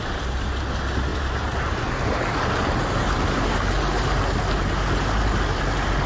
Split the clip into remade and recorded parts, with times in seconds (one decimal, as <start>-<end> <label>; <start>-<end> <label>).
0.0-1.1 recorded; 1.1-1.9 remade; 1.9-6.1 recorded